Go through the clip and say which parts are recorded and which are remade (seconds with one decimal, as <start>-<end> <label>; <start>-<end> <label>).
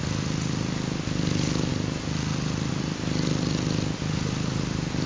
0.0-5.1 recorded